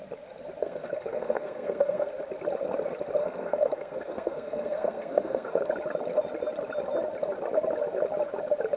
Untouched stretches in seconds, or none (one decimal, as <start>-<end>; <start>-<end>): 0.0-0.6; 2.1-3.2; 5.6-8.8